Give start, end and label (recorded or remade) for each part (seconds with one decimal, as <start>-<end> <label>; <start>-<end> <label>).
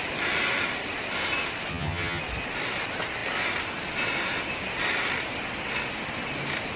0.0-1.7 recorded; 1.7-2.2 remade; 2.2-6.8 recorded